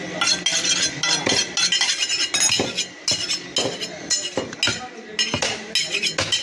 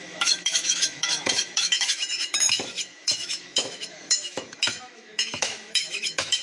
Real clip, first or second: first